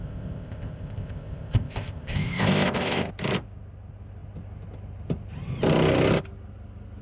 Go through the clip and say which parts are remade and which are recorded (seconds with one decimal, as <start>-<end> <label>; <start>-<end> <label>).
0.0-3.1 remade; 3.1-7.0 recorded